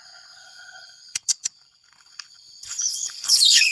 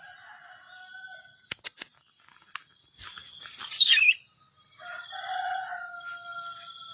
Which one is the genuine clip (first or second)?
second